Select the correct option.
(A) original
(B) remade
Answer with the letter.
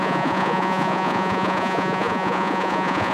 B